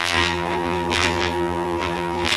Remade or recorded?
remade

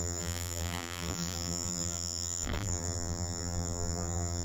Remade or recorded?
remade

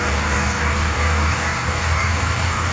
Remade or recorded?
remade